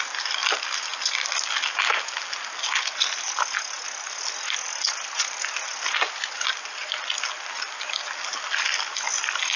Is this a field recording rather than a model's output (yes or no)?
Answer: yes